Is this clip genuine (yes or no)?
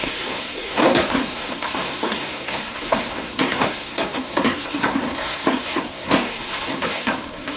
no